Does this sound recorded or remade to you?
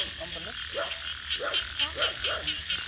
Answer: recorded